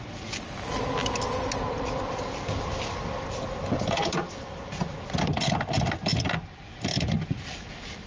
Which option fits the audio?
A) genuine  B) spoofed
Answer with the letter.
A